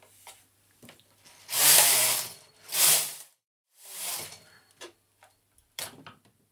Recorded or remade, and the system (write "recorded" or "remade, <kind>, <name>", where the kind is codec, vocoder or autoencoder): remade, vocoder, BigVGAN v2